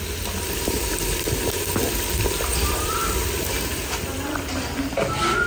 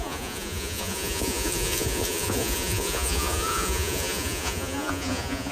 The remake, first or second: second